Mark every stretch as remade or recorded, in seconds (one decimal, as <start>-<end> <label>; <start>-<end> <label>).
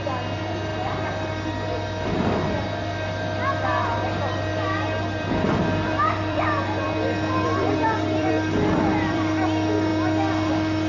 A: 0.0-9.9 remade; 9.9-10.5 recorded; 10.5-10.9 remade